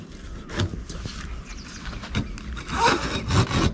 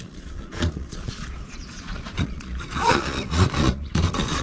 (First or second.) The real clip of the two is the first